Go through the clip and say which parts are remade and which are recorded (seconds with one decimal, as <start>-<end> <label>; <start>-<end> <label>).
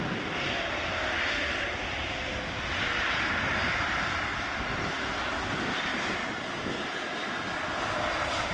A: 0.0-8.5 recorded